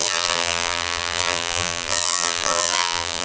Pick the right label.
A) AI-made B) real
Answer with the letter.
A